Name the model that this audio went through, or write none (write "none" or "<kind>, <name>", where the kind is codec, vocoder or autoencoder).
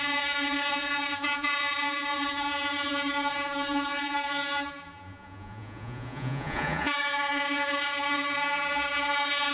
vocoder, Vocos